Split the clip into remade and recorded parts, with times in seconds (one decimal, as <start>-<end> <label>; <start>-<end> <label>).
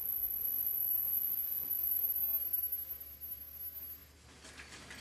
0.0-5.0 recorded